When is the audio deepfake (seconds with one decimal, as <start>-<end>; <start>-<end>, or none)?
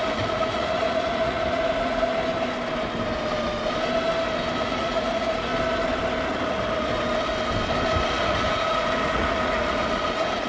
0.0-2.1; 4.6-5.5; 6.2-6.9; 8.2-10.5